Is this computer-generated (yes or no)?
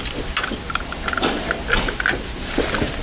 no